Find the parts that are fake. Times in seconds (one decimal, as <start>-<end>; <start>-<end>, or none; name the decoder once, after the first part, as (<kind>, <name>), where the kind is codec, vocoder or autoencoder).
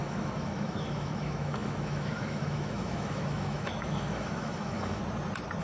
0.0-5.0 (autoencoder, DAC-VAE)